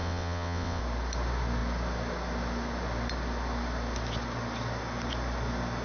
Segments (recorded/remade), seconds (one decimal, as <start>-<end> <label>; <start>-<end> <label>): 0.0-0.8 remade; 0.8-5.8 recorded